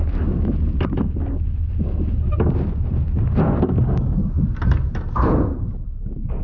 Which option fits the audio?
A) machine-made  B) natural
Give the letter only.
B